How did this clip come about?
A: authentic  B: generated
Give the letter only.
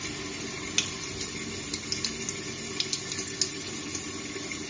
A